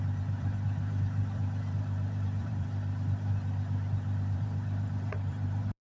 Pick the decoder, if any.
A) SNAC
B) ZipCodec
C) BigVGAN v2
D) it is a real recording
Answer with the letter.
C